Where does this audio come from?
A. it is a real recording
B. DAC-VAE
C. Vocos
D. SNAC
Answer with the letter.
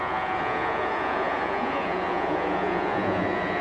C